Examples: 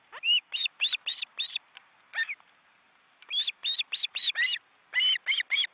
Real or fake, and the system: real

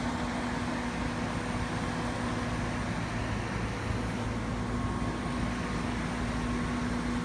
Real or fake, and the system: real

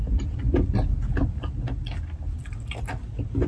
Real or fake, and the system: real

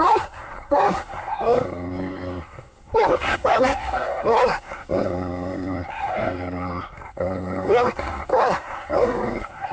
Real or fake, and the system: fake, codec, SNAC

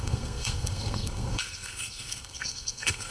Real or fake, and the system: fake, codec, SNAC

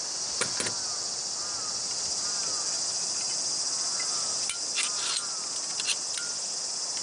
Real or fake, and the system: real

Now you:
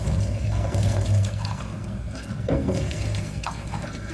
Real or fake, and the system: fake, codec, SNAC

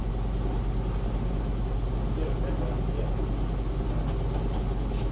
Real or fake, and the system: real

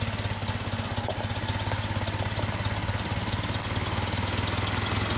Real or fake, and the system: real